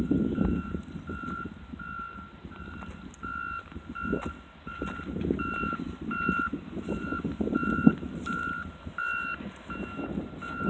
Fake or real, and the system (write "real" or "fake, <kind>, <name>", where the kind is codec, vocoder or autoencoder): real